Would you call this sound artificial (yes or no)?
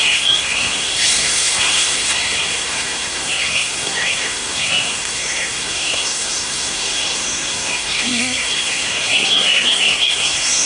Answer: yes